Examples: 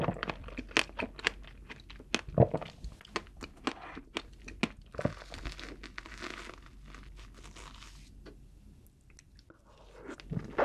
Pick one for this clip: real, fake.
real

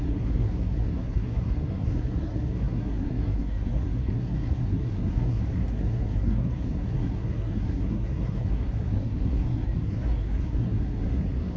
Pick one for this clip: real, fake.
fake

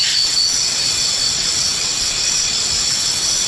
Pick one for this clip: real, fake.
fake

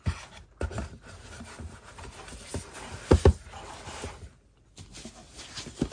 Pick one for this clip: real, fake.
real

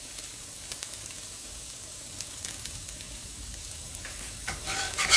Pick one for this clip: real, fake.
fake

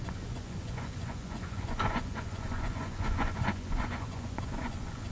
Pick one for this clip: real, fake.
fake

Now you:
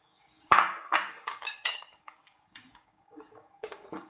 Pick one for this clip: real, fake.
fake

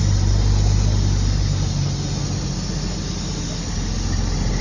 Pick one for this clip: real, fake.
real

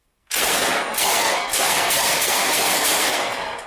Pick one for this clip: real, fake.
fake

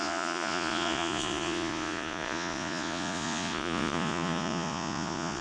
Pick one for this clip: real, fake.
fake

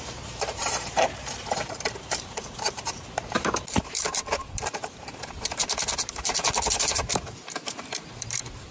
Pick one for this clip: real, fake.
fake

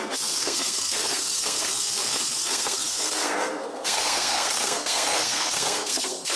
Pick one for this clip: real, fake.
fake